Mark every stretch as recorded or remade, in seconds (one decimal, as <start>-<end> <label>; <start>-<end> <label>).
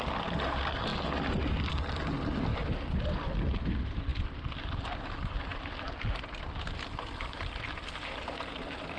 0.0-0.9 remade; 0.9-1.7 recorded; 1.7-2.5 remade; 2.5-3.6 recorded; 3.6-5.5 remade; 5.5-6.3 recorded; 6.3-9.0 remade